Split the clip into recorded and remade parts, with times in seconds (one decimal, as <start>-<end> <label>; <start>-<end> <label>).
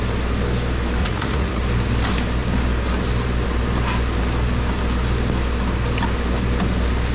0.0-1.0 recorded; 1.0-1.6 remade; 1.6-7.1 recorded